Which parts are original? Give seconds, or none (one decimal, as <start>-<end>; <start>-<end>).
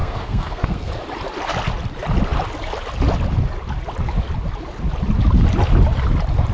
0.9-6.5